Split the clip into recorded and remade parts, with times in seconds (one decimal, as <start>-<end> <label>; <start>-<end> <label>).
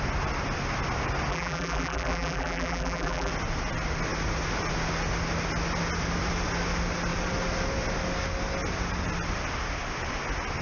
0.0-1.3 recorded; 1.3-3.3 remade; 3.3-10.6 recorded